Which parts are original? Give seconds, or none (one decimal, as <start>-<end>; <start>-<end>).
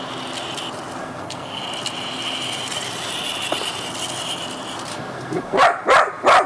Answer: 0.0-1.0; 1.6-4.9; 5.6-6.5